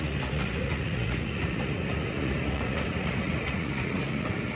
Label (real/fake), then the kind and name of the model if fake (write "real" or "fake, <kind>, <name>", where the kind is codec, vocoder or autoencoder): fake, vocoder, Vocos